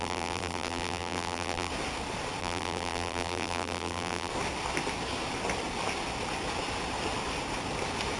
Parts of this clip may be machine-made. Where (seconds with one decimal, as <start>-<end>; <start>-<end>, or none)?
0.0-1.7; 2.4-4.3